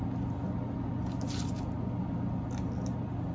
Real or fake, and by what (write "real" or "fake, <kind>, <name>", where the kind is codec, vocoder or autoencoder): real